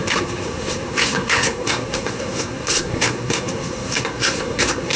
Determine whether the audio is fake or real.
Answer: fake